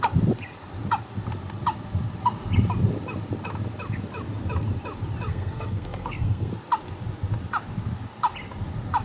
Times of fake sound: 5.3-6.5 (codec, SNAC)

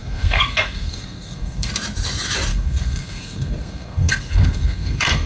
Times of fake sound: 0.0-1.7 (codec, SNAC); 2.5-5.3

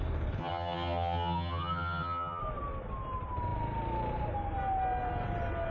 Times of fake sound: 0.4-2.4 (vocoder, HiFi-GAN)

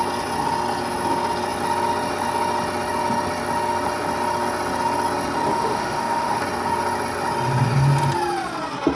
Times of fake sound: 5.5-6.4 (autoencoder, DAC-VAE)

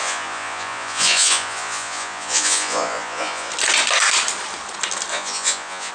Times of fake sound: 0.0-3.5 (vocoder, Vocos); 5.1-5.9

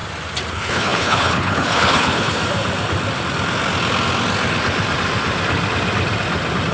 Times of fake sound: 0.5-2.4 (codec, HILCodec)